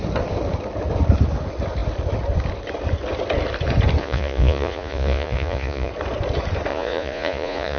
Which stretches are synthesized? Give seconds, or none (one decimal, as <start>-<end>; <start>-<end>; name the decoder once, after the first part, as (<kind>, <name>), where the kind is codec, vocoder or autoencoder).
4.0-5.9 (vocoder, Vocos); 6.7-7.8